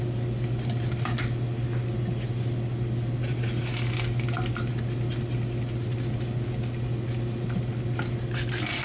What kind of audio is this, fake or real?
real